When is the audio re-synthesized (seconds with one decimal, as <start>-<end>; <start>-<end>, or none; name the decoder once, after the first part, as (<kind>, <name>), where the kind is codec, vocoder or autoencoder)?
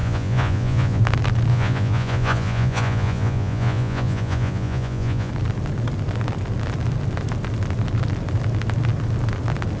0.0-1.0 (vocoder, Vocos); 1.5-5.3